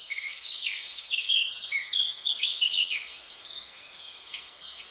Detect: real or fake fake